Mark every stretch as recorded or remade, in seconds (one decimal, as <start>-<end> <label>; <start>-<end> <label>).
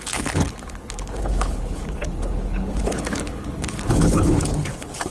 0.0-5.1 remade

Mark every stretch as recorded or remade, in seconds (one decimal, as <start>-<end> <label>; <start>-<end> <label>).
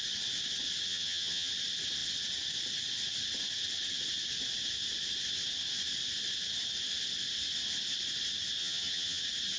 0.0-0.9 recorded; 0.9-1.5 remade; 1.5-8.6 recorded; 8.6-9.2 remade; 9.2-9.6 recorded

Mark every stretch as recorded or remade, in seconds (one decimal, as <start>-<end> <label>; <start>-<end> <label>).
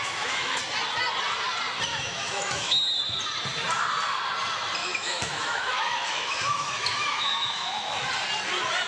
0.0-0.6 remade; 0.6-1.9 recorded; 1.9-2.8 remade; 2.8-4.8 recorded; 4.8-8.1 remade; 8.1-8.9 recorded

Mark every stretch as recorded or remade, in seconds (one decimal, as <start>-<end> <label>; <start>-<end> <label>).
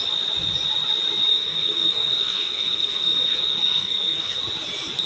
0.0-1.3 recorded; 1.3-4.4 remade; 4.4-5.1 recorded